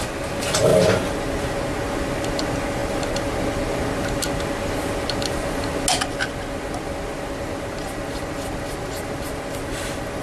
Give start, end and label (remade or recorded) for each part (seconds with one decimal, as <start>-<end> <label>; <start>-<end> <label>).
0.0-10.2 recorded